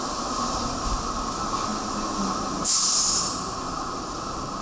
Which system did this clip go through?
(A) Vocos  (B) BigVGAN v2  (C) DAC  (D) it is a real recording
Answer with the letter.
D